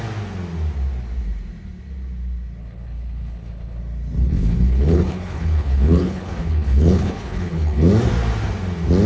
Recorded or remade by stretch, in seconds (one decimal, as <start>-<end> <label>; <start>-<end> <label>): 0.0-2.6 recorded; 2.6-3.8 remade; 3.8-4.2 recorded; 4.2-7.9 remade; 7.9-9.1 recorded